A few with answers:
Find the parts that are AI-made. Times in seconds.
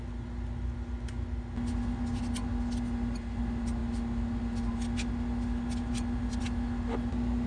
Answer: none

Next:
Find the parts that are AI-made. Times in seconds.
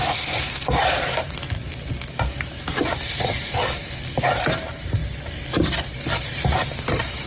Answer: 0.0-1.4 (vocoder, BigVGAN v2); 2.4-3.8; 4.4-5.0; 6.1-7.3